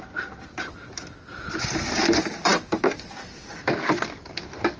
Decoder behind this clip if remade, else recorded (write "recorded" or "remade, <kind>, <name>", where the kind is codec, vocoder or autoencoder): recorded